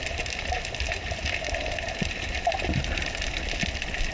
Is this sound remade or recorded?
recorded